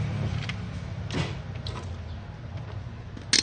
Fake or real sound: real